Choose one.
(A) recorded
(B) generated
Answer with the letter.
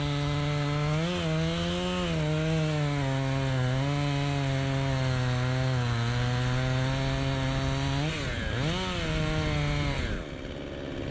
A